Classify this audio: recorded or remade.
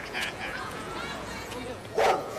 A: remade